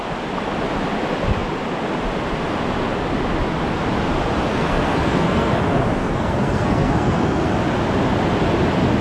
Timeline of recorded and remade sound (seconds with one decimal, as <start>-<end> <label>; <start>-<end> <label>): 0.0-4.5 recorded; 4.5-5.6 remade; 5.6-6.0 recorded; 6.0-7.5 remade; 7.5-9.0 recorded